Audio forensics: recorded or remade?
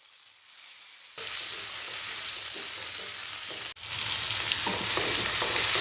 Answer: recorded